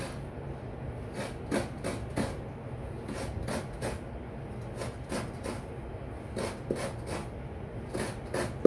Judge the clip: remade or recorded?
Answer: recorded